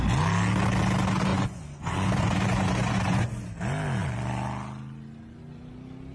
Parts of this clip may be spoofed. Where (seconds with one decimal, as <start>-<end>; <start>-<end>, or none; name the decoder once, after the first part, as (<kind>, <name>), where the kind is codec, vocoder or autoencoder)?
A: 1.3-3.5 (vocoder, Vocos)